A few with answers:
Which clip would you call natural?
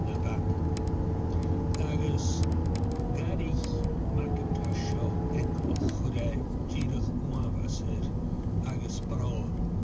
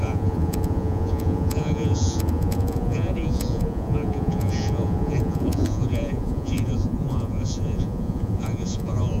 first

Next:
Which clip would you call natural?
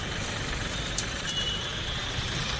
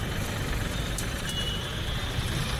second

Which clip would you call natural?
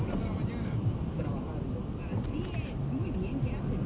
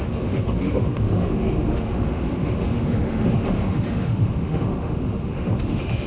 first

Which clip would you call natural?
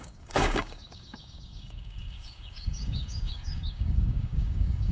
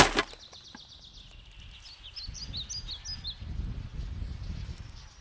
second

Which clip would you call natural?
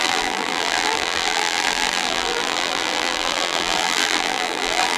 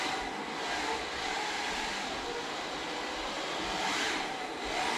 second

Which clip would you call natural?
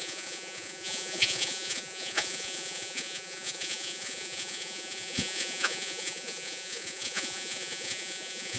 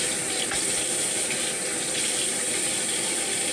second